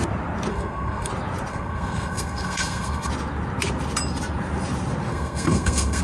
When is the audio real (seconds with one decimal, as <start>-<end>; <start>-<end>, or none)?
0.0-0.5; 1.1-1.5; 3.1-5.1